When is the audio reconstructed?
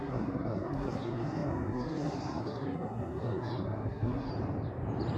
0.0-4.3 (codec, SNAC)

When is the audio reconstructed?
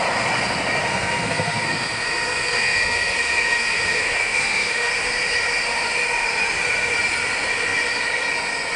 0.9-4.9 (codec, SNAC)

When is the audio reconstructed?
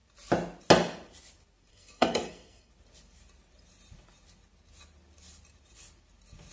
1.7-2.7 (codec, SNAC)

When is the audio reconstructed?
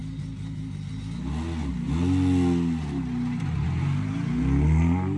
none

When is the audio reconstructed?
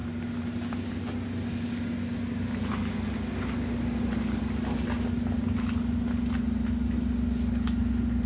none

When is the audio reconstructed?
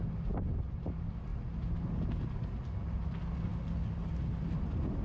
none